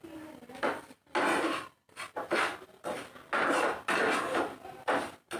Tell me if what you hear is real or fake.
real